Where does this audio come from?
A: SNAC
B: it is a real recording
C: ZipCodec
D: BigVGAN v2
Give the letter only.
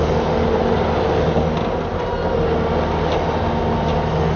B